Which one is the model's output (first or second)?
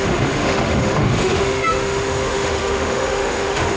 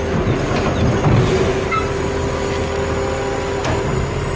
first